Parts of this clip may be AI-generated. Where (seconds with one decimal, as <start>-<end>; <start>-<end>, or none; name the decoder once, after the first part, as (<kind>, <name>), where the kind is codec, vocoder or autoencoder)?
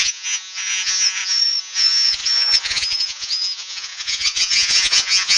0.0-5.4 (vocoder, Vocos)